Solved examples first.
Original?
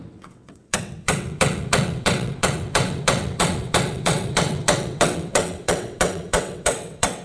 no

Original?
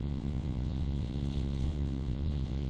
no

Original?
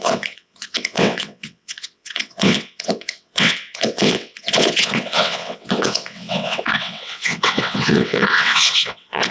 no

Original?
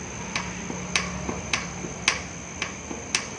yes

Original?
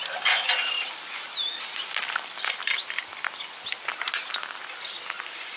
yes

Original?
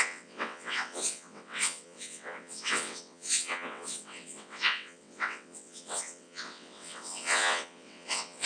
no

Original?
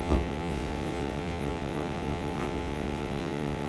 no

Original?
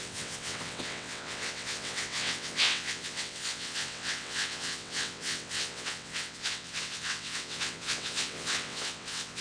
no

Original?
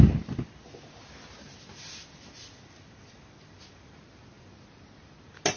yes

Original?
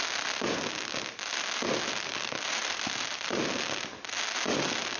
yes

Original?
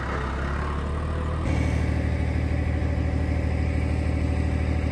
yes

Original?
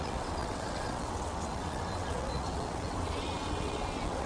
no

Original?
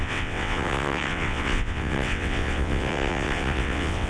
no